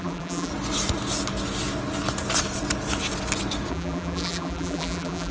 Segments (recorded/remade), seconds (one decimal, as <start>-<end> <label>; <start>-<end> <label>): 0.0-0.5 remade; 0.5-3.7 recorded; 3.7-5.3 remade